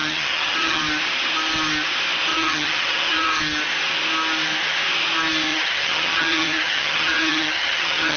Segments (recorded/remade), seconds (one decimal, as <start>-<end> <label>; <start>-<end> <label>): 0.0-0.8 remade; 0.8-2.3 recorded; 2.3-3.4 remade; 3.4-5.5 recorded; 5.5-8.2 remade